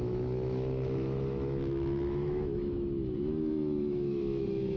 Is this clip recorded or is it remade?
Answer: remade